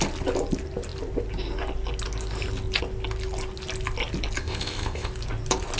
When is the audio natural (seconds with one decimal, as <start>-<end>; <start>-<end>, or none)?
0.0-4.4; 5.1-5.8

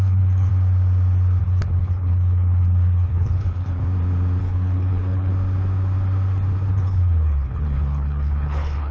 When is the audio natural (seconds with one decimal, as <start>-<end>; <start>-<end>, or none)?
0.5-1.4; 3.8-4.4; 5.3-6.7

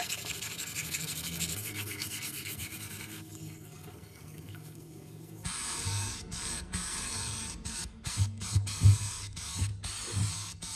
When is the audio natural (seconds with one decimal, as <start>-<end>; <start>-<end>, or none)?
9.7-10.3

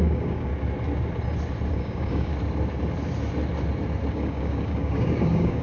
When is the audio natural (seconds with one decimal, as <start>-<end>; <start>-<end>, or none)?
0.5-1.7; 2.3-4.1